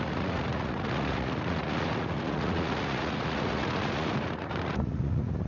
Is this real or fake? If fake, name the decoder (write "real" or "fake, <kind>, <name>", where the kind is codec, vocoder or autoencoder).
fake, vocoder, Vocos